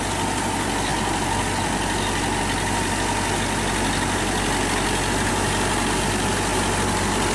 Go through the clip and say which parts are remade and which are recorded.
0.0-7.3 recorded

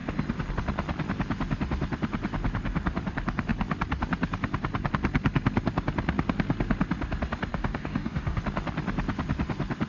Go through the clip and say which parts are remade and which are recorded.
0.0-7.5 recorded; 7.5-8.4 remade; 8.4-9.9 recorded

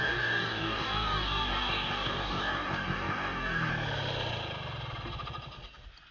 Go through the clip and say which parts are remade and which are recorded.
0.0-3.7 remade; 3.7-6.1 recorded

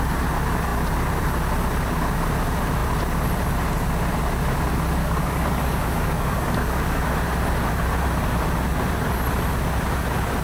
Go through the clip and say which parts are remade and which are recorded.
0.0-5.0 recorded; 5.0-7.0 remade; 7.0-10.4 recorded

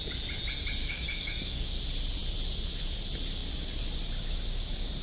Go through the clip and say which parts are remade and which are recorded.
0.0-0.8 recorded; 0.8-1.8 remade; 1.8-5.0 recorded

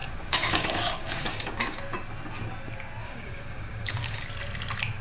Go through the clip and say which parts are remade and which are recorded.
0.0-1.8 remade; 1.8-3.0 recorded; 3.0-4.3 remade; 4.3-5.0 recorded

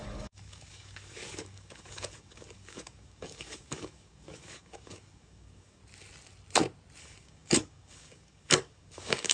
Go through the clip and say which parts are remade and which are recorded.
0.0-5.8 remade; 5.8-7.0 recorded; 7.0-9.3 remade